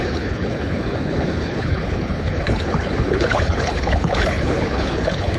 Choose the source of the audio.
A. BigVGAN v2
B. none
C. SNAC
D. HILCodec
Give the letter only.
D